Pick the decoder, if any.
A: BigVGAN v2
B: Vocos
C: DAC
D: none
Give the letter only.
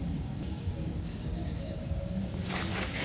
C